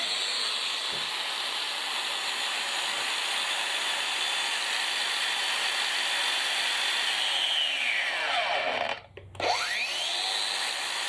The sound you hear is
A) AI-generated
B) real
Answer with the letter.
B